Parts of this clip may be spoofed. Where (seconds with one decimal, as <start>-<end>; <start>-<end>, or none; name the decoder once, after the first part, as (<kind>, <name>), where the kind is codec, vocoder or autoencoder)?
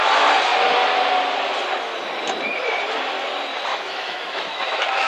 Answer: 3.7-5.1 (autoencoder, DAC-VAE)